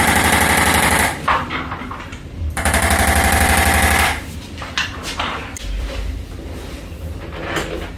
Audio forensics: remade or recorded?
remade